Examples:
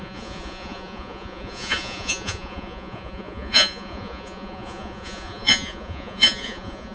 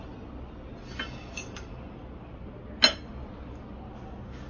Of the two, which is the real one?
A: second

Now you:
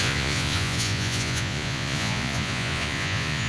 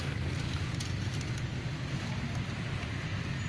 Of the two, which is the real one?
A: second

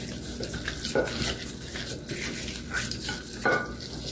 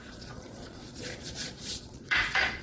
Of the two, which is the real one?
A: first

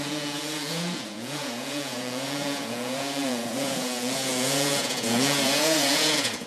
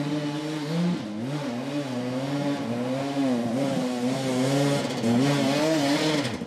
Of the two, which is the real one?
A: second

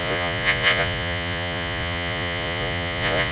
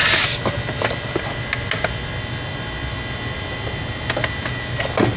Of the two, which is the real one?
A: second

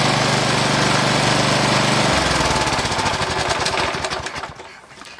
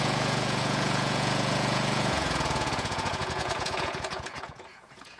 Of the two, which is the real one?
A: first